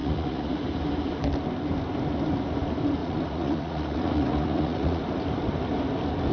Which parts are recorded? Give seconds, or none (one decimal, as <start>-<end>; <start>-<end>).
0.6-3.0; 5.0-6.3